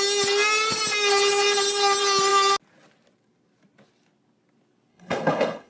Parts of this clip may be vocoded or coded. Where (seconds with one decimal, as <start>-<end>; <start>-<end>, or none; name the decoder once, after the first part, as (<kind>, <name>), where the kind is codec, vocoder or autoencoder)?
4.9-5.7 (codec, HILCodec)